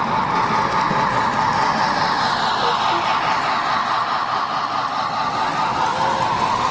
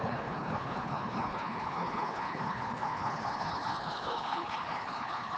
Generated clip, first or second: second